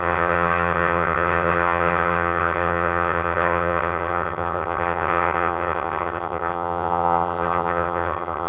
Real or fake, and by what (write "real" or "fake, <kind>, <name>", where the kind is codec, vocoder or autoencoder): fake, vocoder, HiFi-GAN